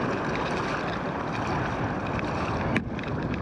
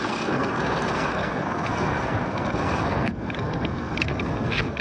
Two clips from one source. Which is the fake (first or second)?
second